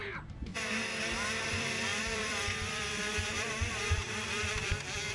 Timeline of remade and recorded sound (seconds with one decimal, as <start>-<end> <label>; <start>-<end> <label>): 0.0-0.5 remade; 0.5-1.5 recorded; 1.5-5.1 remade